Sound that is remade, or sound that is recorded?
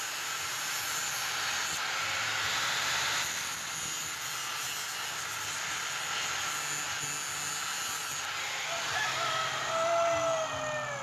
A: recorded